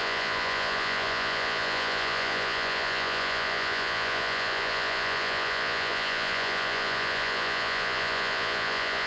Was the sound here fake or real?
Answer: fake